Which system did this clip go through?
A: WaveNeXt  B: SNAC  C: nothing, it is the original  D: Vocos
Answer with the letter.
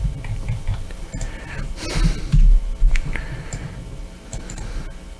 C